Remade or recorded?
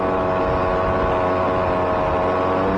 recorded